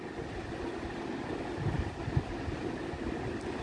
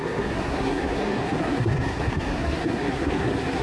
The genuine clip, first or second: first